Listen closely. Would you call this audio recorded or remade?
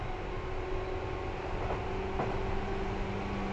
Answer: recorded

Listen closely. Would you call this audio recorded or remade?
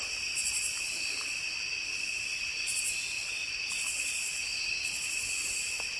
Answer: recorded